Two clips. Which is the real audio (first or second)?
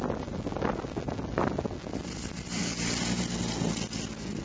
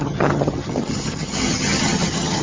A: first